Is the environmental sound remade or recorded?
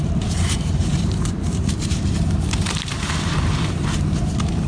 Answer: remade